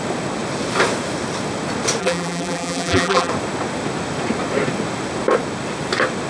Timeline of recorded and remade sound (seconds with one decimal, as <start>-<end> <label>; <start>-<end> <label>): 0.0-2.0 recorded; 2.0-3.3 remade; 3.3-6.3 recorded